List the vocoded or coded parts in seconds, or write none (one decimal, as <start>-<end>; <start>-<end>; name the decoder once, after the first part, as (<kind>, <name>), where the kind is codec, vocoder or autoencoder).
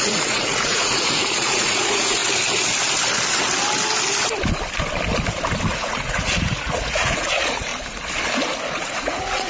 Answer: 0.0-2.2 (vocoder, Vocos); 5.7-7.7; 8.7-9.5